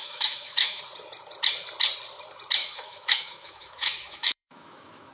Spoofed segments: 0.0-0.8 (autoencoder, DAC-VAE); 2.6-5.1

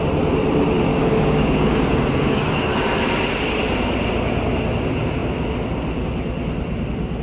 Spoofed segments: 0.9-2.7 (codec, DAC)

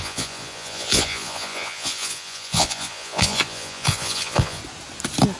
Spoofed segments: 0.0-4.6 (vocoder, Vocos)

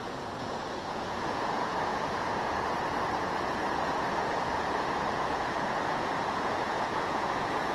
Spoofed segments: 0.0-7.7 (vocoder, Vocos)

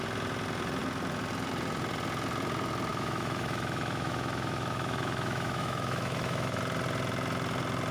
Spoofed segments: 2.9-6.6 (autoencoder, DAC-VAE)

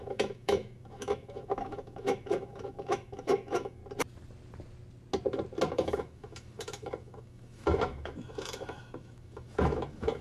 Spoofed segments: 0.0-3.8 (autoencoder, DAC-VAE); 5.7-10.2